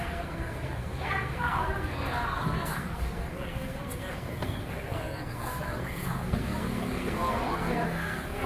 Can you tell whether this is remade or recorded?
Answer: remade